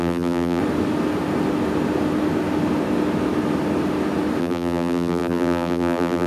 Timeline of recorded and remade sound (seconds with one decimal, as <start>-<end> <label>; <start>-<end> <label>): 0.0-0.6 remade; 0.6-4.4 recorded; 4.4-6.3 remade